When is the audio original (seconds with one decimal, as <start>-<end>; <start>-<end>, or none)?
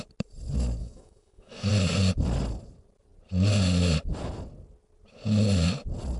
0.0-0.8; 1.7-6.2